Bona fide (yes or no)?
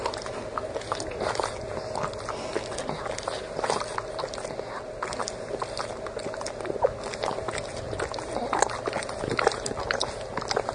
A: yes